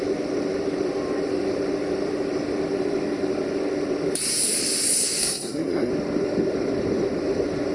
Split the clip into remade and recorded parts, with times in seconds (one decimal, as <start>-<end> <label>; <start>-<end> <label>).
0.0-5.2 recorded; 5.2-5.9 remade; 5.9-7.7 recorded